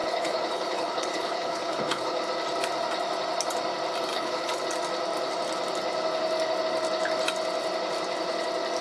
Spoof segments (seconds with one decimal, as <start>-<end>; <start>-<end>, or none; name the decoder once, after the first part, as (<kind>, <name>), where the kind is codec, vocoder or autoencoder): 0.0-2.2 (codec, HILCodec); 4.1-4.6